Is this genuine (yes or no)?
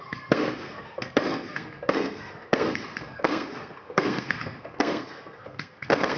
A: no